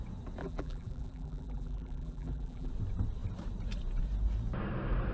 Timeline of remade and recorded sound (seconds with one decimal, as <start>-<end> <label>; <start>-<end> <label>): 0.0-0.4 recorded; 0.4-2.7 remade; 2.7-5.1 recorded